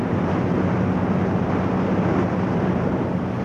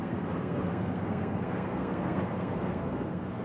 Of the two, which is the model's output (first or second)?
second